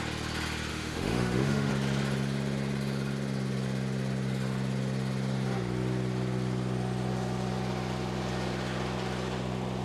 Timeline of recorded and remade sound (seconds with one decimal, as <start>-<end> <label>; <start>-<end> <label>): 0.0-0.7 recorded; 0.7-1.7 remade; 1.7-9.8 recorded